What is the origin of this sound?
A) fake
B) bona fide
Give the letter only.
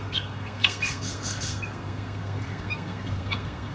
A